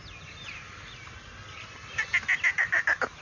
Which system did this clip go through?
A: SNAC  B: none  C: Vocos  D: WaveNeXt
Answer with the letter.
B